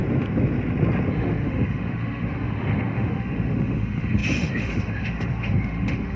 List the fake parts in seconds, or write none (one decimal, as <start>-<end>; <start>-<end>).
1.1-6.2